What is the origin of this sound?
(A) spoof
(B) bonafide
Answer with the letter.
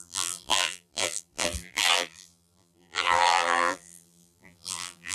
A